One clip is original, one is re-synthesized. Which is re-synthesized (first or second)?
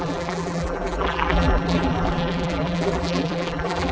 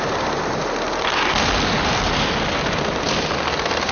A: first